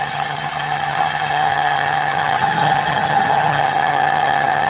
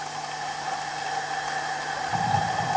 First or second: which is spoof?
first